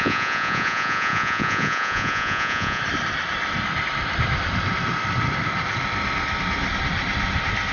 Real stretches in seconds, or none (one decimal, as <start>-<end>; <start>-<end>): 2.8-7.7